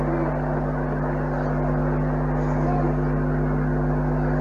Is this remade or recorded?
recorded